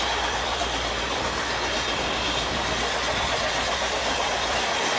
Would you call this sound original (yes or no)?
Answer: no